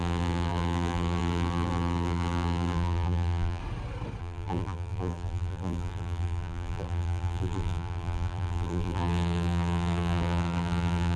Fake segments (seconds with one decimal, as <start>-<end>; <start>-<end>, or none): 0.0-3.6; 4.2-11.2